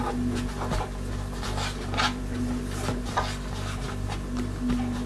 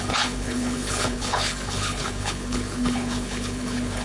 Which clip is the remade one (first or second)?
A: second